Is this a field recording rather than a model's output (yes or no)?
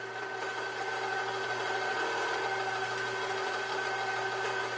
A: yes